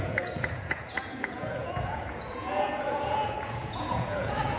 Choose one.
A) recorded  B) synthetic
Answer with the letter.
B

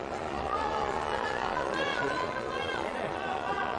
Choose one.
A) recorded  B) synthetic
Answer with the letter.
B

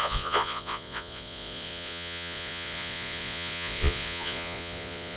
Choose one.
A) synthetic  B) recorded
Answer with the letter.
A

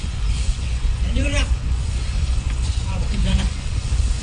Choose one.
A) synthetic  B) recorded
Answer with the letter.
A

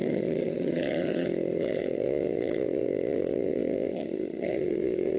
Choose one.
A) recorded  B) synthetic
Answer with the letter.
B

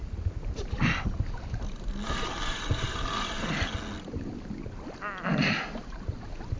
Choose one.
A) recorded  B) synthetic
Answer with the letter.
A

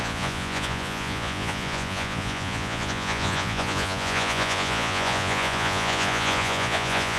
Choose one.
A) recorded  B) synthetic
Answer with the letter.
B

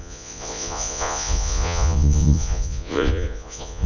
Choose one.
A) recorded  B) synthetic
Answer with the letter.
B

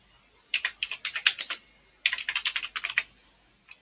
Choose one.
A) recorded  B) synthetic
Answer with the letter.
A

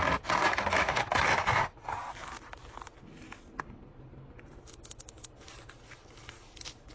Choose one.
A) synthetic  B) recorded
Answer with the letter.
B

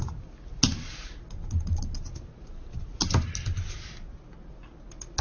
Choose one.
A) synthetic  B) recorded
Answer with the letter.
B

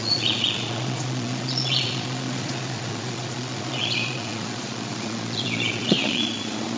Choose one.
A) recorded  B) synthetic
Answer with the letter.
B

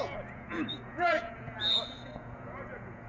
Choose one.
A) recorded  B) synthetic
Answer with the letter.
B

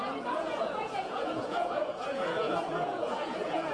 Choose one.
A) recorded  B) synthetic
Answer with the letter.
B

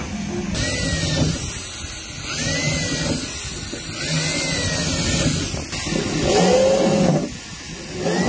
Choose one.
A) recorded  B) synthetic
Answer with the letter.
A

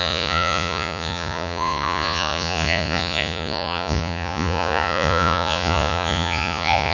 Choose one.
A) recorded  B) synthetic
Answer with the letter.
B